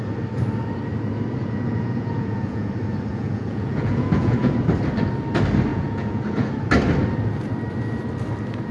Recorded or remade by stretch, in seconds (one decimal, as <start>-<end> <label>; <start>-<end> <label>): 0.0-1.4 recorded; 1.4-2.7 remade; 2.7-3.1 recorded; 3.1-4.5 remade; 4.5-5.7 recorded; 5.7-6.5 remade; 6.5-8.7 recorded